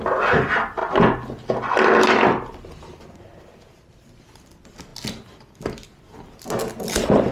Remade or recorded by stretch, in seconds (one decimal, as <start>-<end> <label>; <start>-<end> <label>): 0.0-7.3 recorded